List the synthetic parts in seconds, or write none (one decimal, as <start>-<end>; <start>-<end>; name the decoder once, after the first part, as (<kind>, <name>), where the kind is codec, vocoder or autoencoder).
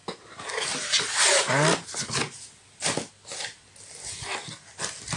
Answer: none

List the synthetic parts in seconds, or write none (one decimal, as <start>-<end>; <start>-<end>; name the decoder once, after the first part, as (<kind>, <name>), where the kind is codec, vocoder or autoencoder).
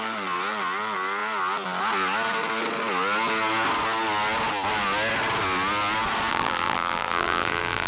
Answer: 6.3-7.9 (vocoder, BigVGAN v2)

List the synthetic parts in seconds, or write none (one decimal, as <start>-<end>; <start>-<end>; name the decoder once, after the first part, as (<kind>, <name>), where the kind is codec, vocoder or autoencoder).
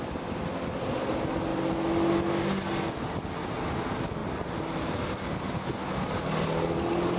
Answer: none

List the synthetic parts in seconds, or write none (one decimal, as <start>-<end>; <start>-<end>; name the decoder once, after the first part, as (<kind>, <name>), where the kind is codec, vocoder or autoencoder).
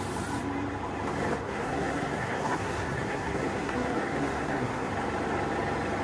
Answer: 1.4-4.9 (codec, SNAC)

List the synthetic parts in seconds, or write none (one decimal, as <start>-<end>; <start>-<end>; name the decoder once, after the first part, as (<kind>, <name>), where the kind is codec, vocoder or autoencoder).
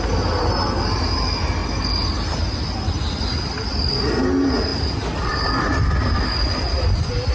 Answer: none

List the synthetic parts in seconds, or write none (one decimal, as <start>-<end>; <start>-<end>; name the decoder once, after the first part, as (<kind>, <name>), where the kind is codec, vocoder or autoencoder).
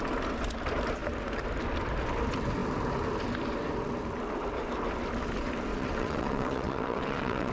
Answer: 5.7-7.5 (vocoder, WaveNeXt)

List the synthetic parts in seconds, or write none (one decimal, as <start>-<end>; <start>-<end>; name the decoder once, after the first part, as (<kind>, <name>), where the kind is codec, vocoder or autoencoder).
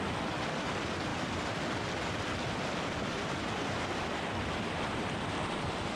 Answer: none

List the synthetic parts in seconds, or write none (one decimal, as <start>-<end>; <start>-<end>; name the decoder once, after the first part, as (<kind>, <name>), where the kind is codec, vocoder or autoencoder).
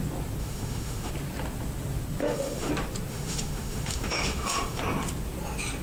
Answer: 0.4-1.1 (autoencoder, DAC-VAE); 2.2-2.7; 3.1-4.8